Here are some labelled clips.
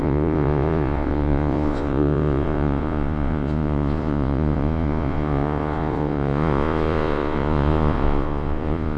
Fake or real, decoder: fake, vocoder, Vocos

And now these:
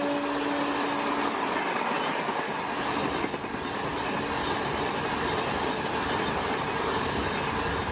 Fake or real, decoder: real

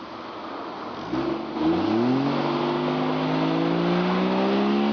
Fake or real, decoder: real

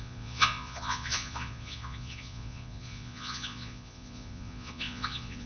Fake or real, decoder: fake, vocoder, Vocos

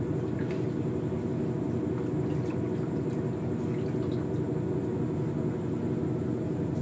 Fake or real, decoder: real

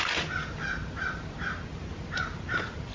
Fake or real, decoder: real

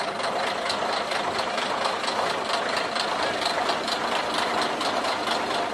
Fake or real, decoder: real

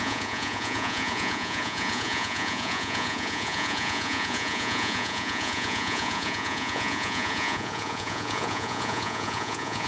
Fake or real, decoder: fake, vocoder, Vocos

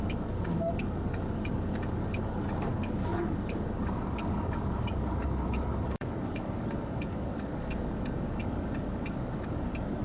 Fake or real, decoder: fake, codec, DAC